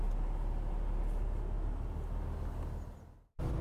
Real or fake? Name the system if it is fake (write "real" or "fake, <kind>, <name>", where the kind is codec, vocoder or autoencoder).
real